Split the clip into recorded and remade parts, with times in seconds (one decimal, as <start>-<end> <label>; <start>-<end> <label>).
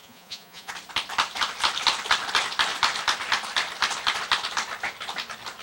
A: 0.0-0.7 remade; 0.7-5.6 recorded